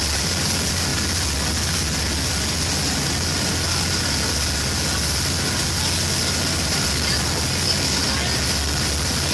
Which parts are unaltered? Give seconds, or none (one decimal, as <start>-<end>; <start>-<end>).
0.0-9.3